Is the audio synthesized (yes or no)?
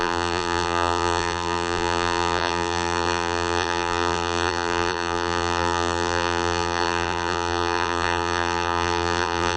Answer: yes